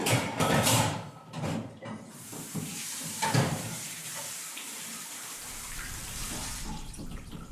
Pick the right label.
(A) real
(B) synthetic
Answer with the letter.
B